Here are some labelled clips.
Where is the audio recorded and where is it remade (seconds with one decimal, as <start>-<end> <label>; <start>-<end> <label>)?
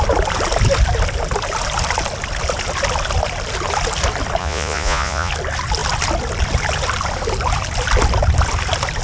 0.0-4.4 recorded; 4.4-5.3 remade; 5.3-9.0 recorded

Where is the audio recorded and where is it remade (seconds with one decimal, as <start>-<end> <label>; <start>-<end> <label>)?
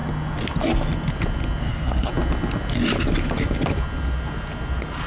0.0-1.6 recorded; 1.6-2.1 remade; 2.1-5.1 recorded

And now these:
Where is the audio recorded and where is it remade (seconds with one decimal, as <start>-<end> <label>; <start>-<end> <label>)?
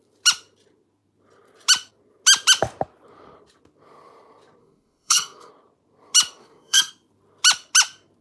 0.0-4.6 recorded; 4.6-5.5 remade; 5.5-6.4 recorded; 6.4-6.9 remade; 6.9-8.2 recorded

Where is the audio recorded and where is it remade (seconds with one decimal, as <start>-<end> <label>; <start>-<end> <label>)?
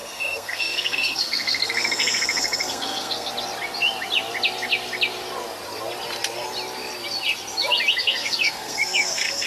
0.0-3.3 remade; 3.3-8.0 recorded; 8.0-9.5 remade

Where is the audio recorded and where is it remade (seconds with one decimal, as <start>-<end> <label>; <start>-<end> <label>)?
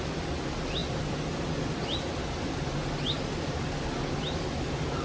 0.0-5.0 recorded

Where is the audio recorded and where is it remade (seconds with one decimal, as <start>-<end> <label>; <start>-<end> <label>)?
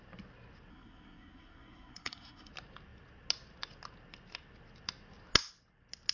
0.0-0.7 recorded; 0.7-2.5 remade; 2.5-6.1 recorded